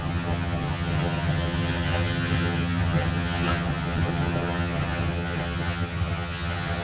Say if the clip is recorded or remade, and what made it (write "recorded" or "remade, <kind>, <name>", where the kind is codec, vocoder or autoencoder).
remade, vocoder, HiFi-GAN